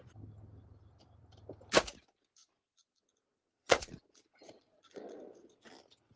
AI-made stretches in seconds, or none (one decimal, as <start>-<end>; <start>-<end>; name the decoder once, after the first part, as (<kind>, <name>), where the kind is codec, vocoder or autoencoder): 2.4-5.2 (vocoder, Vocos)